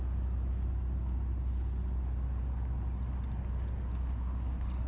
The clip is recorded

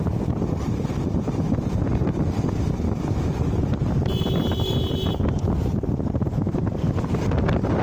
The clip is recorded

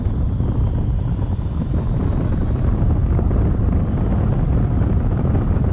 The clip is recorded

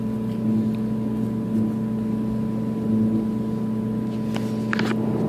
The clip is recorded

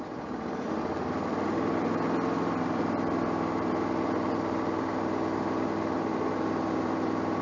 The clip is recorded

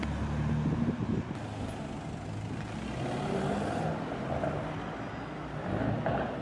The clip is recorded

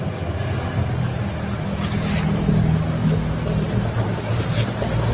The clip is recorded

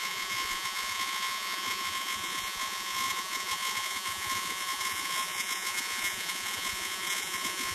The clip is remade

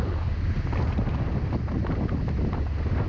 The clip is recorded